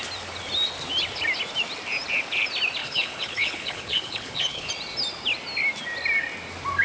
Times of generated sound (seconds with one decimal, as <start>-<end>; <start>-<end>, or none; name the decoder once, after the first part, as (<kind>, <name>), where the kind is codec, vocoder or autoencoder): 2.8-4.7 (codec, HILCodec)